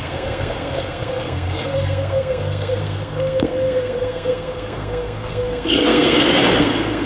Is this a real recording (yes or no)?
no